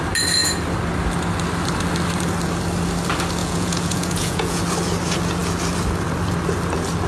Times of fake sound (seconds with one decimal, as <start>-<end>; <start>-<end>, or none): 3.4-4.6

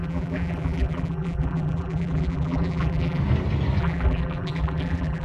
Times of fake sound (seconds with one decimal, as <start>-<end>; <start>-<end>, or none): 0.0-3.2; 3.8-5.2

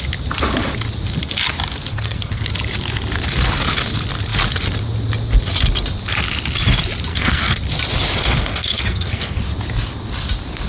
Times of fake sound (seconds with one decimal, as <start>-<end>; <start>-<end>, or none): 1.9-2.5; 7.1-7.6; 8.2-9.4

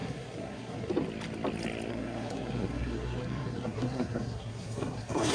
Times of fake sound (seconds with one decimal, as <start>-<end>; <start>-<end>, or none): 0.0-0.9; 1.9-5.3

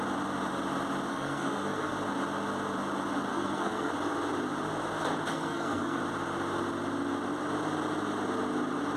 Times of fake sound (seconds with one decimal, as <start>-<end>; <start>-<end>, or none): 1.1-1.9; 3.3-3.9; 5.3-6.0